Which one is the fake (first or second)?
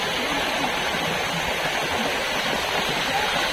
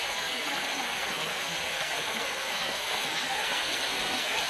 second